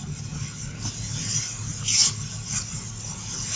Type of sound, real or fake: real